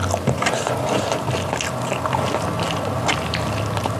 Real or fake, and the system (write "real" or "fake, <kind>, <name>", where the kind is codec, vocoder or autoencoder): real